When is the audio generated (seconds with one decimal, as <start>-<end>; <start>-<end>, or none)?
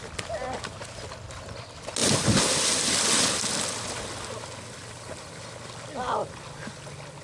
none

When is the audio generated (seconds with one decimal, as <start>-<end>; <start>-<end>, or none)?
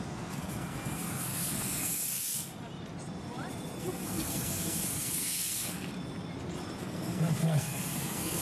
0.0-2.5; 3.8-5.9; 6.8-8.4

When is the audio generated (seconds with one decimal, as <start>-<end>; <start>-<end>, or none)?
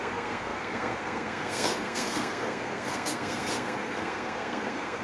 0.0-5.0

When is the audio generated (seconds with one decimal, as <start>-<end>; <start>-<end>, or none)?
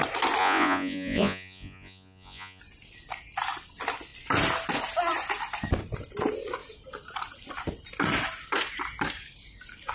0.4-2.6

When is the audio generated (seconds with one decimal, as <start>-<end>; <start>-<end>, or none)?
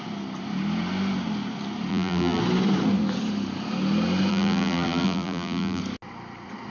1.9-2.4; 4.3-5.8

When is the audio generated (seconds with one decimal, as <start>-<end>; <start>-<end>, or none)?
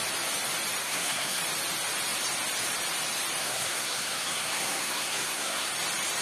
0.8-1.4; 3.4-5.7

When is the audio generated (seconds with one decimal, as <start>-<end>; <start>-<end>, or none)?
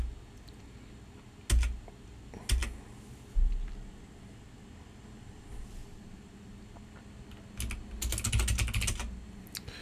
none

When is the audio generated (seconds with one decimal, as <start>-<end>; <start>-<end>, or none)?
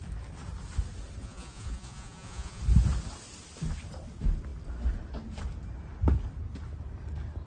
1.2-2.6